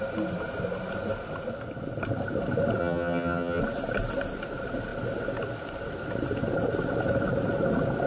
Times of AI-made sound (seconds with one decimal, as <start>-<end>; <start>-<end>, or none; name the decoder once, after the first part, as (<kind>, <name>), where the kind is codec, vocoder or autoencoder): 2.8-3.6 (vocoder, HiFi-GAN)